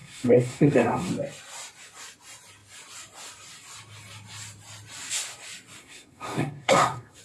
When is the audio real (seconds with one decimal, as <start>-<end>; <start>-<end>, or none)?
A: 1.1-5.8